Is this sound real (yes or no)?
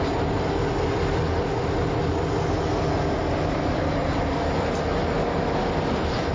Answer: yes